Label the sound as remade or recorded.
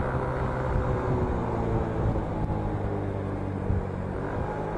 recorded